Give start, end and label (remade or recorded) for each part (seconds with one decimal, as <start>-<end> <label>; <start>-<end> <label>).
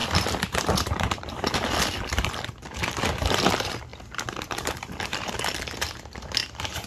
0.0-3.5 remade; 3.5-3.9 recorded; 3.9-5.3 remade; 5.3-6.4 recorded; 6.4-6.9 remade